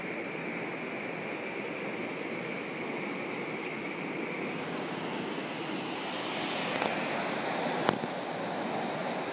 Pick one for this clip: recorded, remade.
recorded